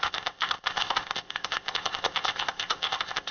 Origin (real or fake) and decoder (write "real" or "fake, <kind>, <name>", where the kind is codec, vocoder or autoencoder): fake, codec, ZipCodec